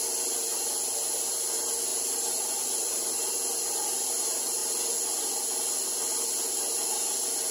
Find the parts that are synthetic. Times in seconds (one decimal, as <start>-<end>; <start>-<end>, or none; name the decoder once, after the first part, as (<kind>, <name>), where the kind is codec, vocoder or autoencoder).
1.9-3.3 (vocoder, BigVGAN v2)